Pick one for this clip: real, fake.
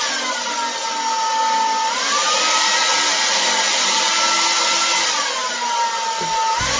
real